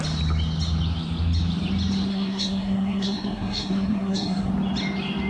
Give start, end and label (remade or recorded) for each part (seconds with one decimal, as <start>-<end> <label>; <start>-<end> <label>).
0.0-2.1 recorded; 2.1-4.5 remade; 4.5-5.3 recorded

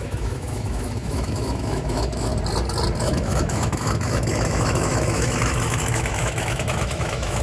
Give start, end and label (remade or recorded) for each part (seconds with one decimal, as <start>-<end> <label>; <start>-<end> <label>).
0.0-2.3 remade; 2.3-3.0 recorded; 3.0-7.4 remade

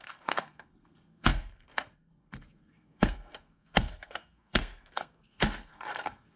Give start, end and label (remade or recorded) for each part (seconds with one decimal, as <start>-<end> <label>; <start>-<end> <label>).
0.0-6.4 remade

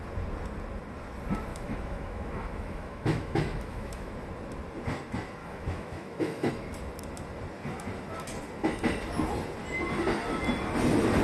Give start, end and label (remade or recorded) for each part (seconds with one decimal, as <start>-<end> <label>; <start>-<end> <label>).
0.0-1.5 recorded; 1.5-4.1 remade; 4.1-5.4 recorded; 5.4-6.5 remade; 6.5-11.2 recorded

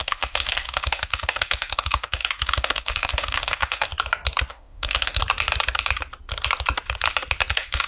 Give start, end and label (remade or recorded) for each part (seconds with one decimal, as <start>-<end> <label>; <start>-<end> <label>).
0.0-3.9 remade; 3.9-4.5 recorded; 4.5-5.2 remade; 5.2-7.5 recorded; 7.5-7.9 remade

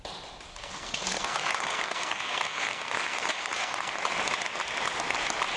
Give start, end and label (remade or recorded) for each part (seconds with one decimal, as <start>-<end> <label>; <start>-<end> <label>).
0.0-0.5 recorded; 0.5-3.9 remade; 3.9-5.6 recorded

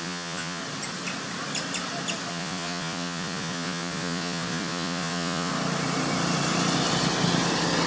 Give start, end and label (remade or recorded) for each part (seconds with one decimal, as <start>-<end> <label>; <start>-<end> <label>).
0.0-0.6 remade; 0.6-2.3 recorded; 2.3-5.5 remade; 5.5-7.9 recorded